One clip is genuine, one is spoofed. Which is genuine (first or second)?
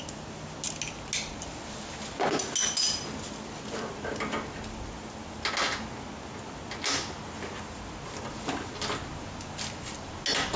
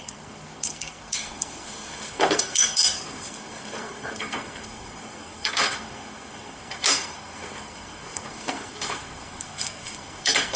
first